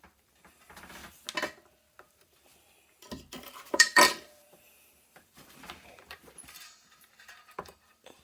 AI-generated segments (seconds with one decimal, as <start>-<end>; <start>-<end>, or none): 0.0-1.0; 2.1-2.5; 3.4-8.2